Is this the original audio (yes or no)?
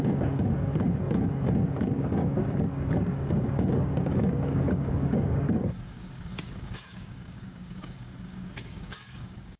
no